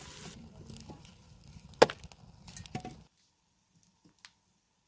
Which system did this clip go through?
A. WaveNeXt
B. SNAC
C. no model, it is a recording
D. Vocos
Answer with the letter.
C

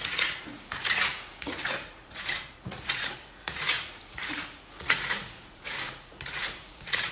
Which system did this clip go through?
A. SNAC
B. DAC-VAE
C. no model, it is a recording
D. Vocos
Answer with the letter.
D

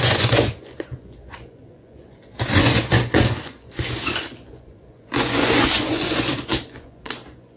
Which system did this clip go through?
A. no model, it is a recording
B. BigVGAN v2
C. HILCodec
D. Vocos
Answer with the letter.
D